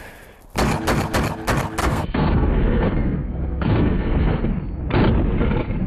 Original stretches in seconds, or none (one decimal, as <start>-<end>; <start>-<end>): 0.0-1.8; 4.5-5.9